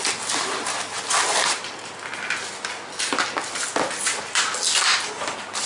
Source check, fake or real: real